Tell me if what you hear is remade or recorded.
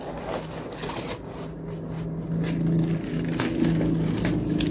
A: recorded